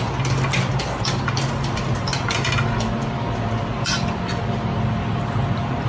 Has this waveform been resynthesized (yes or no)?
no